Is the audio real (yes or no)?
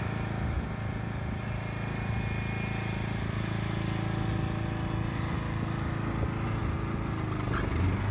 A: yes